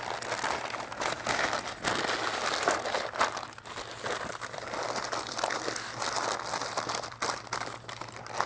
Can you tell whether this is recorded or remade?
recorded